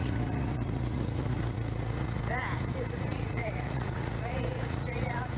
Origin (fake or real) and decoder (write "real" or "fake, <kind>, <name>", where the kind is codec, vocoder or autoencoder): fake, vocoder, Vocos